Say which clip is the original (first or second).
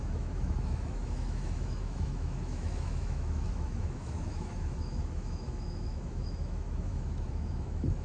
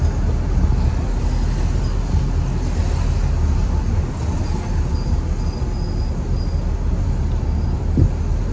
second